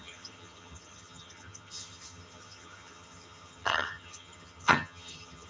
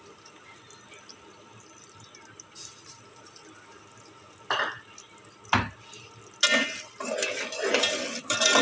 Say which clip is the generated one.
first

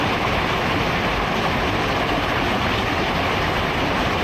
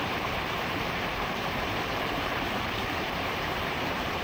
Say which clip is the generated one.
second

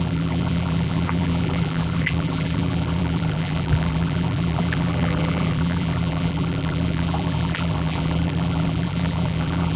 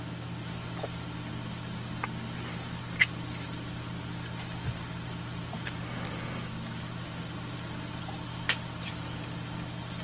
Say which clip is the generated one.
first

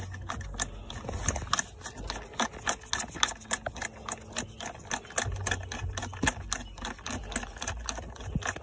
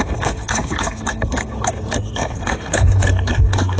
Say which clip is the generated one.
second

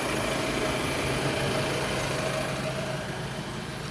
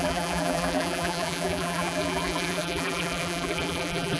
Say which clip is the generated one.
second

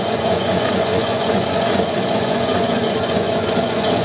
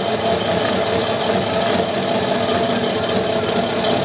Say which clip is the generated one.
first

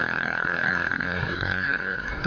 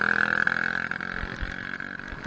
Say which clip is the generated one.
first